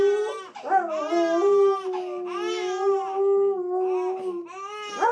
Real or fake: real